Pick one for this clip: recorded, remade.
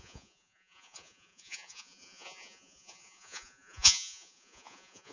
remade